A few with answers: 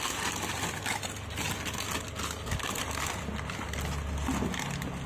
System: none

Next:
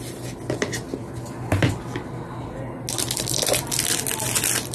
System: none